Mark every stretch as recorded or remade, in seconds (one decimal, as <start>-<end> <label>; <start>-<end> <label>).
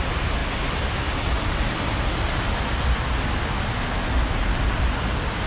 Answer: 0.0-5.5 recorded